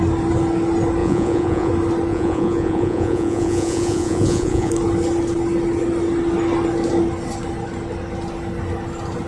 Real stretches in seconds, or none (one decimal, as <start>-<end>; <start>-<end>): 0.0-1.0; 1.7-2.1; 4.7-9.3